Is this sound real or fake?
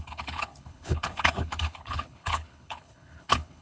fake